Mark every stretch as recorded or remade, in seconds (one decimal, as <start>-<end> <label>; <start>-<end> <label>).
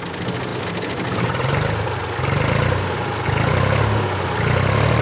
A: 0.0-5.0 recorded